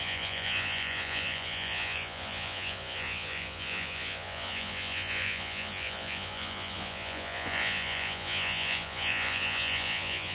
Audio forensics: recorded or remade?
remade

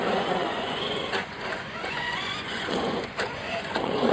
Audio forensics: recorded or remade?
remade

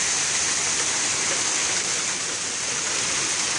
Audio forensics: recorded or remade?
recorded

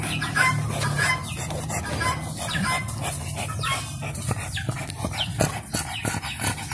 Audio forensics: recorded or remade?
recorded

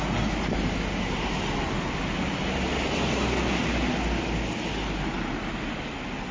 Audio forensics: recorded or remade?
recorded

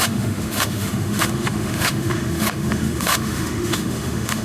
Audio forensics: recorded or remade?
remade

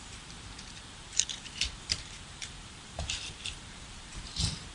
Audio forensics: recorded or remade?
remade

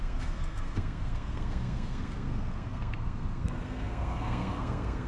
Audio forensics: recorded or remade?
remade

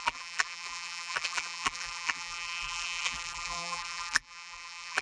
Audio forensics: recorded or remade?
remade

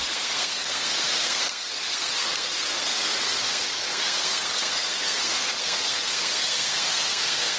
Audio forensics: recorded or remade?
remade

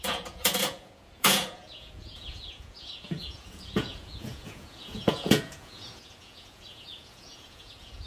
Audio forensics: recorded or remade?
remade